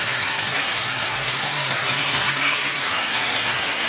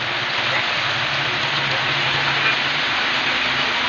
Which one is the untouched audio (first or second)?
second